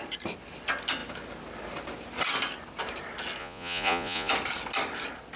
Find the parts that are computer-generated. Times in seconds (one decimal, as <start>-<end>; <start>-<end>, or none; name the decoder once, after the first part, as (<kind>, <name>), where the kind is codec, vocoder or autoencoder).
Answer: 3.4-4.3 (vocoder, Vocos)